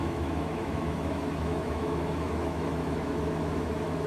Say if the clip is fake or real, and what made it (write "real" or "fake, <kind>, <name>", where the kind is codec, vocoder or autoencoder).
fake, autoencoder, DAC-VAE